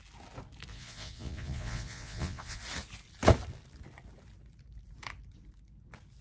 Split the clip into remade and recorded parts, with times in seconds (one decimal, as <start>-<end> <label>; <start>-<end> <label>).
0.0-0.7 recorded; 0.7-2.6 remade; 2.6-6.2 recorded